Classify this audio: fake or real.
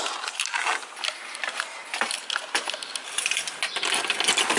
real